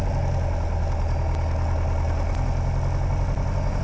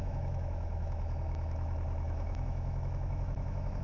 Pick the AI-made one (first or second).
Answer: second